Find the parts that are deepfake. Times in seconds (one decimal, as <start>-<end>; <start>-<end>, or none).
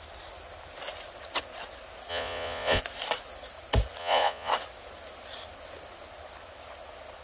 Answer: 2.1-2.8; 4.0-4.5